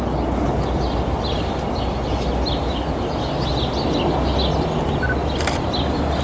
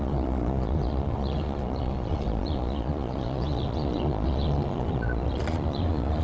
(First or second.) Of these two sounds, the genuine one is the first